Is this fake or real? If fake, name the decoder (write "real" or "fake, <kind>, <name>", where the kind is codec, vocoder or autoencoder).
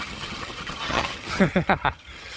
fake, vocoder, HiFi-GAN